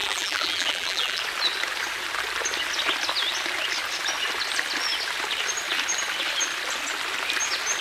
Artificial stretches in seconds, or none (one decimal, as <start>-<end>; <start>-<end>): 0.0-1.2

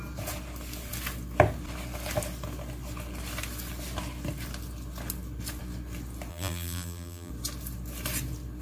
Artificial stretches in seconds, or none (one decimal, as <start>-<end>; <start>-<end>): 6.3-7.3